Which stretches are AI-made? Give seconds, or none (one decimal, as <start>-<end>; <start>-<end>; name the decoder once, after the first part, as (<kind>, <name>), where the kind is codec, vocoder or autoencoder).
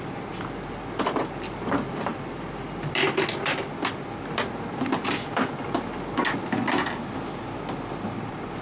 none